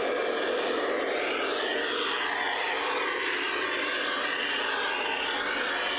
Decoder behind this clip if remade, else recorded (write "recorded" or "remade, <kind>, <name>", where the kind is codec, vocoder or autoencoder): recorded